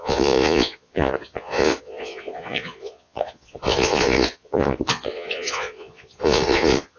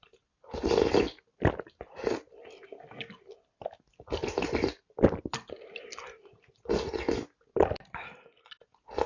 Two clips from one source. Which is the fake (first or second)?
first